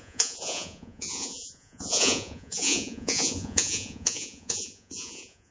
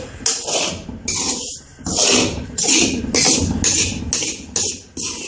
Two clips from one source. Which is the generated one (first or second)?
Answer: first